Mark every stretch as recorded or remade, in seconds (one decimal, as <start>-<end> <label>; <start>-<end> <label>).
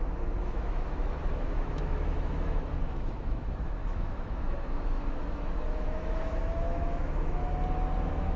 0.0-7.4 remade; 7.4-8.0 recorded; 8.0-8.4 remade